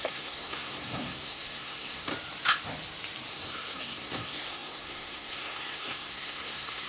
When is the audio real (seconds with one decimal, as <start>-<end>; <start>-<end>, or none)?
2.1-3.3